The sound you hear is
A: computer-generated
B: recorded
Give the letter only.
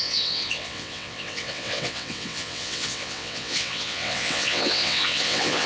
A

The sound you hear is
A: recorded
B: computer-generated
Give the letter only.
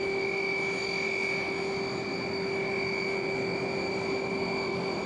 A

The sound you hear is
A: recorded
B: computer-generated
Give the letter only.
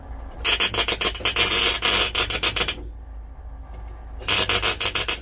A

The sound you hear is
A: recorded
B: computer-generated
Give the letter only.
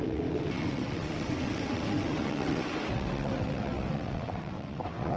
B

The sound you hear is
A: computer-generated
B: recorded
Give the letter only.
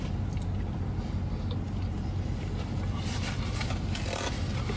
B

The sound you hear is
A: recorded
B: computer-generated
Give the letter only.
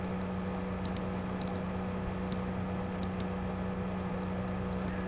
A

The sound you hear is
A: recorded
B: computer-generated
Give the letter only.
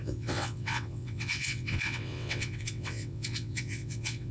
B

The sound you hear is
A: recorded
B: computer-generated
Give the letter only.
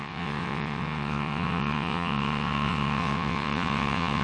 B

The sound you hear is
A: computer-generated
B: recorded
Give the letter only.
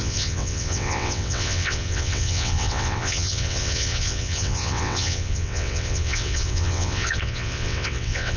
A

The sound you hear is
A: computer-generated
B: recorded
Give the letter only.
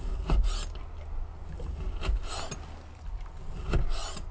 B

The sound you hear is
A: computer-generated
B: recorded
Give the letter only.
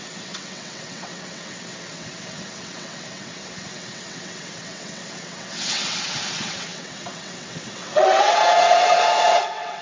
A